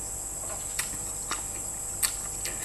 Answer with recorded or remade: recorded